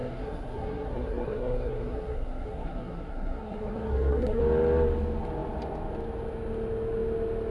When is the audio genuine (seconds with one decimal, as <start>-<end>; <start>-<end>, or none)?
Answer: 4.4-7.5